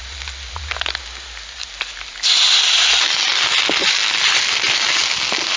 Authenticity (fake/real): real